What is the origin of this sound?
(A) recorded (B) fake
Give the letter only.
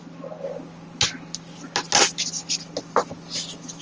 A